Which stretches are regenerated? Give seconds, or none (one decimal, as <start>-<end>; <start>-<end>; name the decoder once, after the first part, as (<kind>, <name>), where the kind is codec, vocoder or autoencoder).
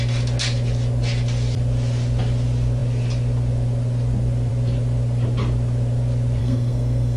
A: 6.4-7.2 (codec, SNAC)